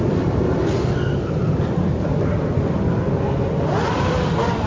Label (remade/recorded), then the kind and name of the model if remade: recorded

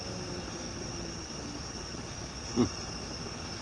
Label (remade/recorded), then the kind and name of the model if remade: recorded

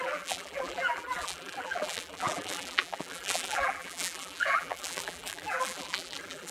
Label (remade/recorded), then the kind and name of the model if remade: remade, vocoder, BigVGAN v2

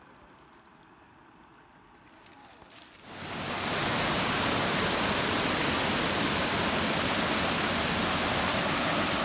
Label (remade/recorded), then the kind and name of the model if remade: recorded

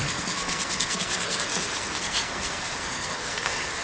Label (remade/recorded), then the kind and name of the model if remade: remade, codec, SNAC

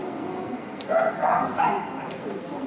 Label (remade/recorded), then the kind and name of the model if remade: remade, codec, SNAC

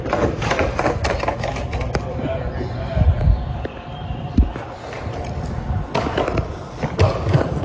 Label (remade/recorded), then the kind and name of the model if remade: recorded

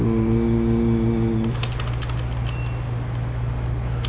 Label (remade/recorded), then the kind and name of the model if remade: recorded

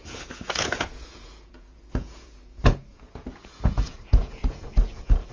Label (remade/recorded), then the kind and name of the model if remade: remade, vocoder, Vocos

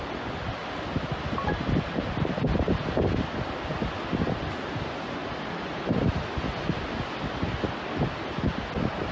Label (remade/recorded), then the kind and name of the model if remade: recorded